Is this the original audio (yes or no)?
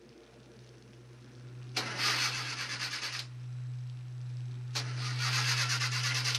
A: yes